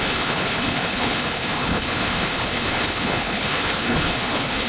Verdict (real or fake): fake